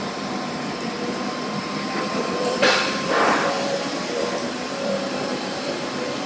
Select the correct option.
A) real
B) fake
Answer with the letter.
B